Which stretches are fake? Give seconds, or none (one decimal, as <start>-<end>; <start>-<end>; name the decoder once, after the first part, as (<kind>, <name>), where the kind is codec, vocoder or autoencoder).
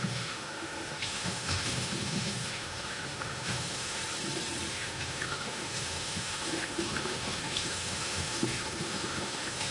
0.0-4.0 (autoencoder, DAC-VAE); 4.7-9.7